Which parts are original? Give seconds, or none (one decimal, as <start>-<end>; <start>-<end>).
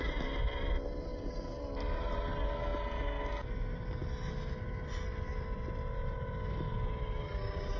0.0-7.8